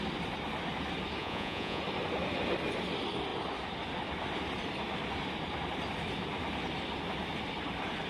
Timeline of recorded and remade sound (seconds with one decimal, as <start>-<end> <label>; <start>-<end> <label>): 0.0-1.2 recorded; 1.2-1.8 remade; 1.8-8.1 recorded

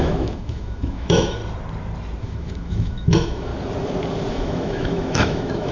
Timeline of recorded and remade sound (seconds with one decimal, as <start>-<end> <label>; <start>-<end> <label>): 0.0-1.4 remade; 1.4-2.2 recorded; 2.2-3.5 remade; 3.5-4.3 recorded; 4.3-5.7 remade

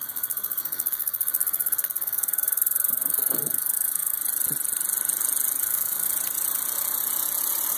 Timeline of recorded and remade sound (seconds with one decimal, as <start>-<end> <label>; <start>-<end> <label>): 0.0-4.2 remade; 4.2-5.6 recorded; 5.6-6.1 remade; 6.1-7.8 recorded

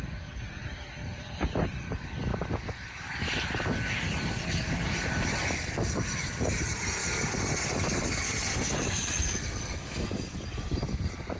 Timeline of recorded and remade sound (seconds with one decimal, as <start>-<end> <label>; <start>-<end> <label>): 0.0-11.4 recorded

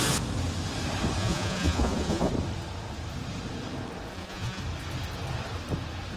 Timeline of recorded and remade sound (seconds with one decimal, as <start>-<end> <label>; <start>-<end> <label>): 0.0-1.2 recorded; 1.2-2.3 remade; 2.3-4.1 recorded; 4.1-4.6 remade; 4.6-6.2 recorded